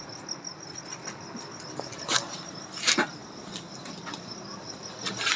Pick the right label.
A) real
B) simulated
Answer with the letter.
A